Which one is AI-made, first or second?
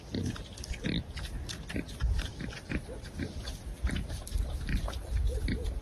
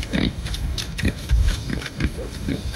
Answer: second